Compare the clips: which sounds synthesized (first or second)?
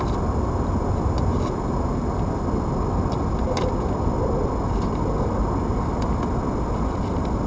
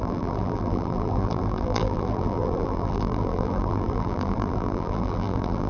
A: second